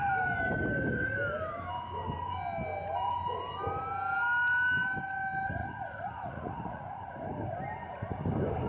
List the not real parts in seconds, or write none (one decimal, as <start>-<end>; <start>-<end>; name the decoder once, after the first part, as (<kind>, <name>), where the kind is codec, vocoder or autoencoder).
5.6-7.1 (vocoder, Vocos)